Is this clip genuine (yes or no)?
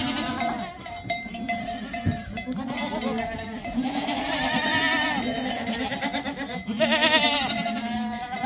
yes